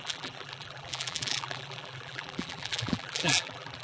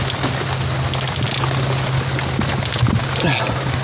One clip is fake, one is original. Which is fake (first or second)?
first